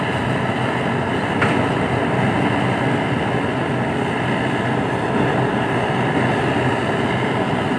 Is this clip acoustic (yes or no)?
yes